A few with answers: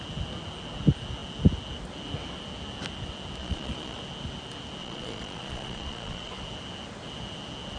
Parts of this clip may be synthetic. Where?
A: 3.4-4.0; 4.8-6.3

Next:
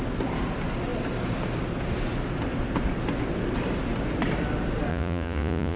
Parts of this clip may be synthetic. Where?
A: 4.9-5.8

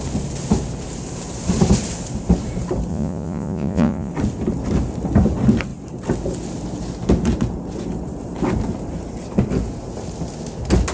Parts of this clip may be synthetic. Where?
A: 2.9-4.1

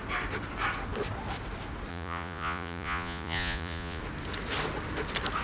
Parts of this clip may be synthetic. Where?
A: 1.9-4.0

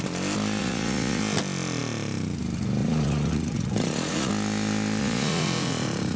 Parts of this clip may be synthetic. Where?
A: 0.6-1.2; 2.8-4.3; 5.0-6.2